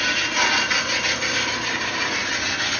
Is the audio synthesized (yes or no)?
no